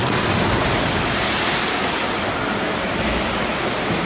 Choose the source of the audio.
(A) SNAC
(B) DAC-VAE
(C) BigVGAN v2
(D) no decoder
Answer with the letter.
D